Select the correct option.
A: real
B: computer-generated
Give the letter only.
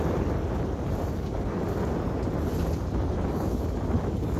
A